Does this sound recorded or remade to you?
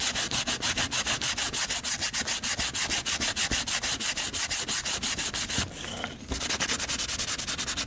recorded